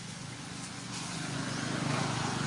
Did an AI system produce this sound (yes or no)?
yes